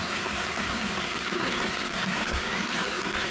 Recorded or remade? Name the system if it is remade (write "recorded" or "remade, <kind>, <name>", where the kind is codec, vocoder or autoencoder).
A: remade, codec, SNAC